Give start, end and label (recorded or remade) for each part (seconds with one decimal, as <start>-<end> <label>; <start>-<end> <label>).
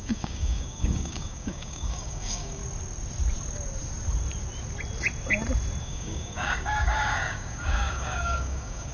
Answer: 0.0-2.6 remade; 2.6-5.8 recorded; 5.8-8.9 remade